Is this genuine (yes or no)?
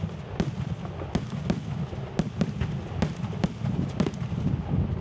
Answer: yes